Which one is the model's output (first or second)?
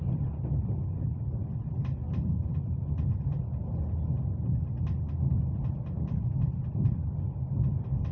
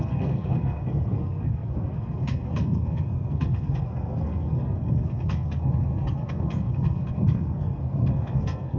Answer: second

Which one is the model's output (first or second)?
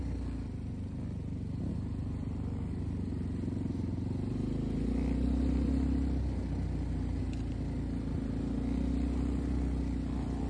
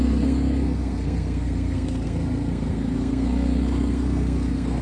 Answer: second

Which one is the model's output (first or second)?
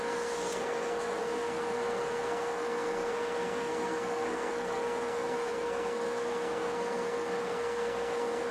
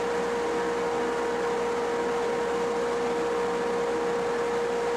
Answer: first